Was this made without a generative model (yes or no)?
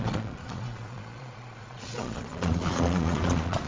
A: no